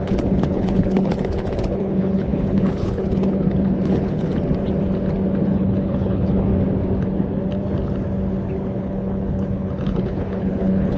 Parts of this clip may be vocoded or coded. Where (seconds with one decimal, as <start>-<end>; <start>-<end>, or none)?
0.0-4.3; 5.5-6.5; 8.8-11.0